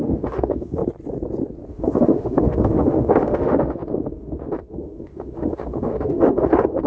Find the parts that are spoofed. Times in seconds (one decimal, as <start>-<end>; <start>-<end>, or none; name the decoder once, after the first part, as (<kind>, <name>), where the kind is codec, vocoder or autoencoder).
0.0-0.8 (autoencoder, DAC-VAE); 1.7-6.9